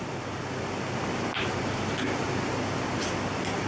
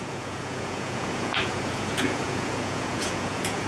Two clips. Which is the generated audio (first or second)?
second